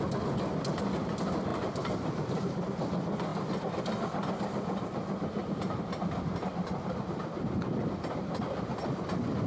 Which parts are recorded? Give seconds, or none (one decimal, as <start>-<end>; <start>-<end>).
0.0-1.5; 2.6-5.4; 7.0-9.5